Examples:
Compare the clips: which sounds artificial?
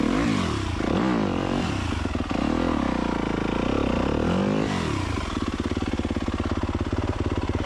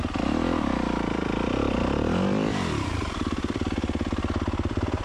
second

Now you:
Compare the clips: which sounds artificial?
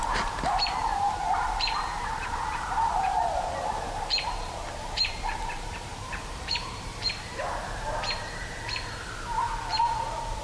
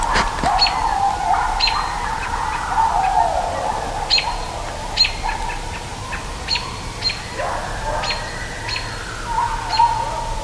first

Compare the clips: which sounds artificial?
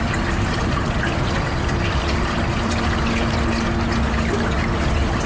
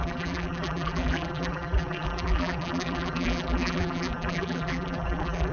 second